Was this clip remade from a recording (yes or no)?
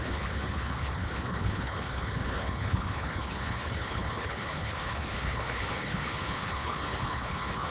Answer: yes